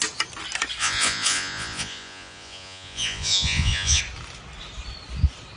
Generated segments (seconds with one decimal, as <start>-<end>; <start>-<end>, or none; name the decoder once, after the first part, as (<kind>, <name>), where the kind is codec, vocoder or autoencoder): 0.8-4.0 (vocoder, Vocos)